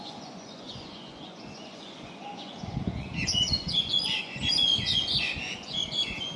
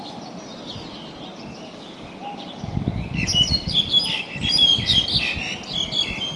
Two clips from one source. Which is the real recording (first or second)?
second